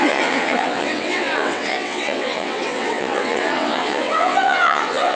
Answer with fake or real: fake